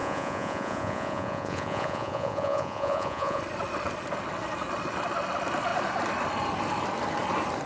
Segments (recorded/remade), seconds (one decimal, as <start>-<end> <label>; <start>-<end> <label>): 0.0-3.4 remade; 3.4-7.7 recorded